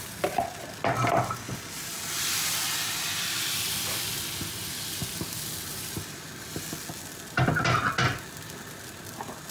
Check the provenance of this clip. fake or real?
real